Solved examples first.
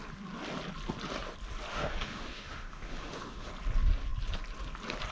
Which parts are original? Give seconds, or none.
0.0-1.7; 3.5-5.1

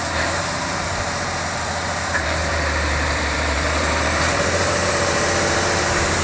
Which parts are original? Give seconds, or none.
none

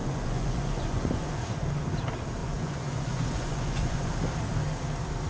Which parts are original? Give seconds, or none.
1.8-2.4; 4.1-5.3

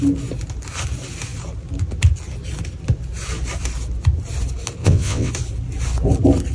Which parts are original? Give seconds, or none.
0.0-4.8; 5.3-6.5

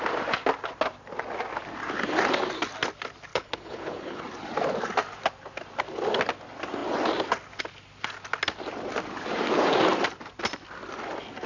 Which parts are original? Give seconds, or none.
0.0-3.3; 4.2-11.5

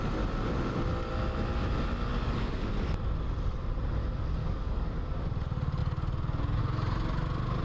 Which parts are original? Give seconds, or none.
0.0-2.1; 2.6-4.4; 5.0-7.6